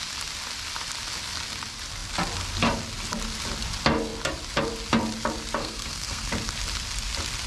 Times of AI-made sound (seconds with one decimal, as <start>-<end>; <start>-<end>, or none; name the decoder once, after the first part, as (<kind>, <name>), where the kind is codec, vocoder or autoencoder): 5.6-6.3 (codec, SNAC)